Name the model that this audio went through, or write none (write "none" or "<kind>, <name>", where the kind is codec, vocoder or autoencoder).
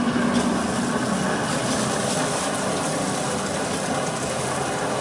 none